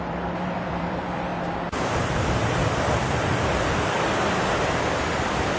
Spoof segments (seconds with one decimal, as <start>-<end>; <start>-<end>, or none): 0.0-2.6